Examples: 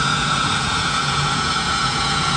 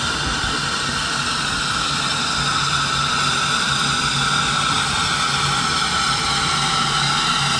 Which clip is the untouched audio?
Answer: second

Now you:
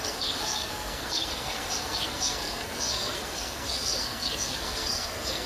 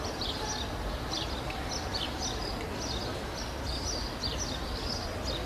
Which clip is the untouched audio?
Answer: second